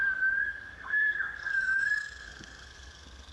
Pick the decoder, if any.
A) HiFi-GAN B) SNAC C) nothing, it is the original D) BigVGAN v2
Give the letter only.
B